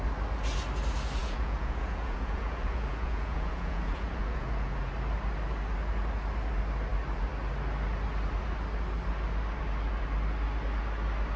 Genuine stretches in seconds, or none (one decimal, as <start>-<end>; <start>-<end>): 0.0-1.2; 4.9-11.4